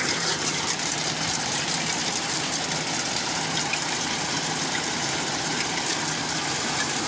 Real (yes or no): no